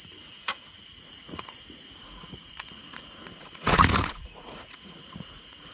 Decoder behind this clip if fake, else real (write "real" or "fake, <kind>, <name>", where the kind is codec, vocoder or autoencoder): fake, vocoder, Vocos